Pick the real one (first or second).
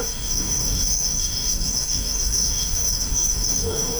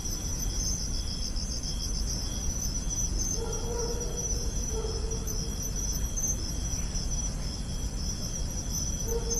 second